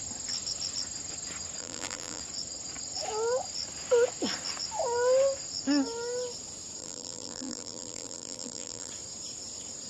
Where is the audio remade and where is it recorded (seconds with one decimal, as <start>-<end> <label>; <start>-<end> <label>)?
0.0-1.6 recorded; 1.6-2.2 remade; 2.2-6.8 recorded; 6.8-8.9 remade; 8.9-9.9 recorded